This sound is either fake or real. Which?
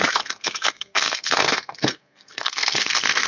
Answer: fake